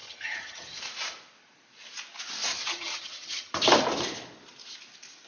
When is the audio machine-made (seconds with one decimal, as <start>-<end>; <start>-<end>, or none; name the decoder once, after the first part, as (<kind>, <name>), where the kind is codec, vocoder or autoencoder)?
0.0-0.8 (vocoder, HiFi-GAN); 2.5-3.5